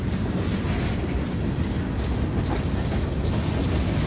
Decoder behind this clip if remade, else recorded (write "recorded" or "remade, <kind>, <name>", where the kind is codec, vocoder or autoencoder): recorded